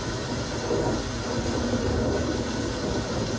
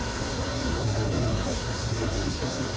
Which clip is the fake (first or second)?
second